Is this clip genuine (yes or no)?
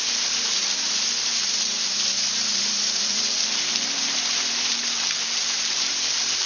no